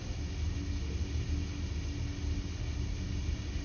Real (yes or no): yes